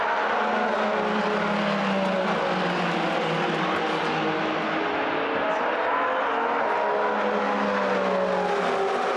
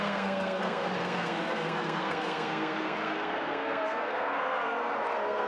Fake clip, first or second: second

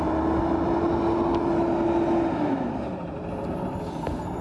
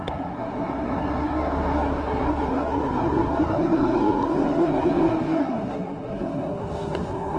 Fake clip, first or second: second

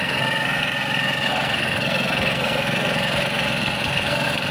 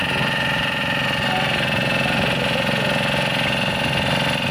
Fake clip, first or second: first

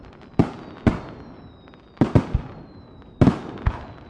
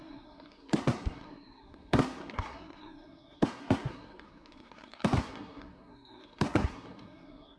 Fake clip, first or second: second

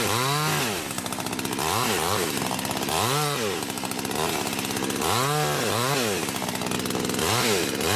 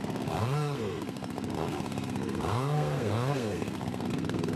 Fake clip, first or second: second